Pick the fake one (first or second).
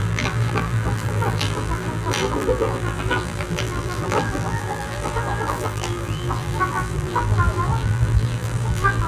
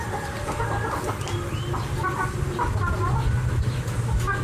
first